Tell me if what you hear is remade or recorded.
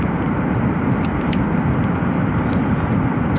recorded